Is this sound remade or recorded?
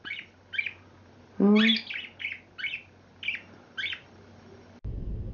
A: recorded